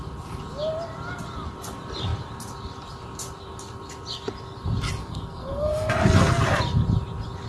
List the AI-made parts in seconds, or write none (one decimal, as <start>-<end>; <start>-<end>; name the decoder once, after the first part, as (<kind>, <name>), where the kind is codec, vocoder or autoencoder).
5.0-5.9 (codec, SNAC)